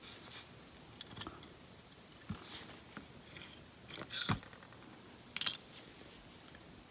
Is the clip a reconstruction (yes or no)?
no